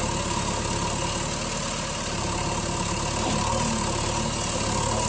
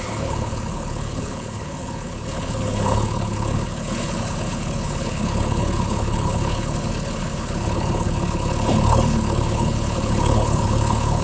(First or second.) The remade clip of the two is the second